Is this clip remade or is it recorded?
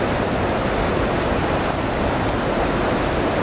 recorded